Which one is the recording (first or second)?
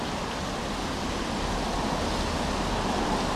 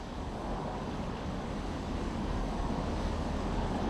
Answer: first